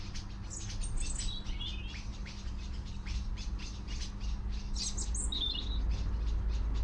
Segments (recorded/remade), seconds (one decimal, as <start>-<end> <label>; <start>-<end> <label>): 0.0-2.1 recorded; 2.1-4.1 remade; 4.1-6.8 recorded